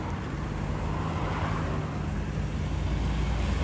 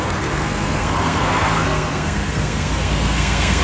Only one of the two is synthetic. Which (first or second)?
second